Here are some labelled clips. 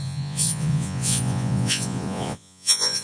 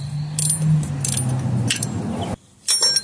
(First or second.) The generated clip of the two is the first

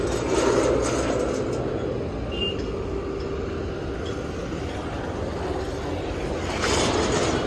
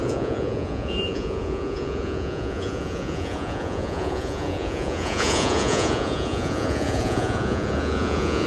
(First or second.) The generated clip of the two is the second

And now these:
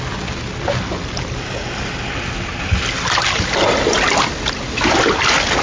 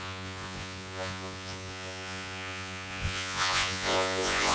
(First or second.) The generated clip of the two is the second